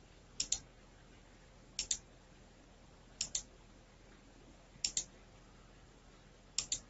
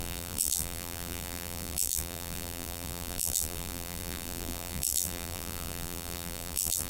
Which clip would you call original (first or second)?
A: first